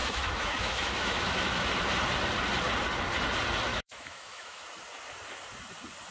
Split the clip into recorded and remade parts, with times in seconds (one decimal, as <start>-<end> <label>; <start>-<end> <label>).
0.0-1.7 remade; 1.7-3.7 recorded; 3.7-4.6 remade; 4.6-6.1 recorded